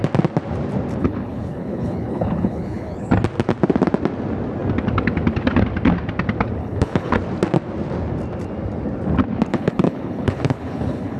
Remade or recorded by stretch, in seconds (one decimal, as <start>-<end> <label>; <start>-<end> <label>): 0.0-1.0 recorded; 1.0-3.1 remade; 3.1-6.6 recorded; 6.6-7.1 remade; 7.1-9.5 recorded; 9.5-11.2 remade